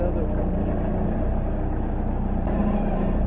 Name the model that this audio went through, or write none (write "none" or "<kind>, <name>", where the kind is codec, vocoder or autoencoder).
none